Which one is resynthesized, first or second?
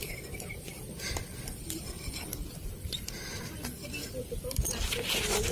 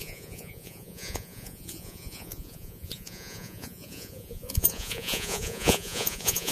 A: second